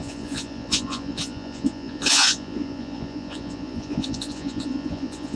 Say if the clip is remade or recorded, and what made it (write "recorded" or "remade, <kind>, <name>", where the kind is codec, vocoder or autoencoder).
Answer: remade, vocoder, Vocos